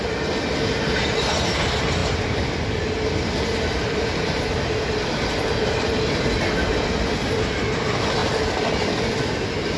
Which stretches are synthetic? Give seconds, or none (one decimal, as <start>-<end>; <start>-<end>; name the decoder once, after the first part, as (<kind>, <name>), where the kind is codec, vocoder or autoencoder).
none